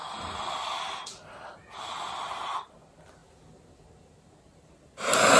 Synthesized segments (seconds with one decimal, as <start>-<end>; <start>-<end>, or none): none